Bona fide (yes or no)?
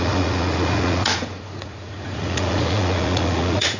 no